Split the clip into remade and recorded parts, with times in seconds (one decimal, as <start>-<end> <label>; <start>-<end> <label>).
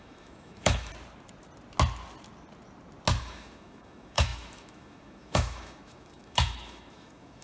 0.0-0.9 remade; 0.9-3.2 recorded; 3.2-7.4 remade